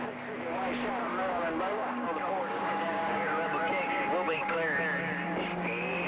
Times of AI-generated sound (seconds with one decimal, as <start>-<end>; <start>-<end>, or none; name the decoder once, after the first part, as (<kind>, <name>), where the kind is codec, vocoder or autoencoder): 1.1-4.8 (codec, DAC); 5.5-6.1